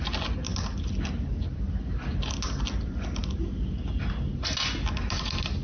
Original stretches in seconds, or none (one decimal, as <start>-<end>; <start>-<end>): 0.0-5.6